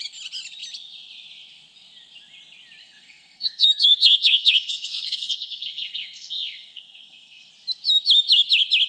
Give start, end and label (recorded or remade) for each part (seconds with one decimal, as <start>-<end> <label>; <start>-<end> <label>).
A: 0.0-2.8 recorded; 2.8-7.5 remade; 7.5-8.9 recorded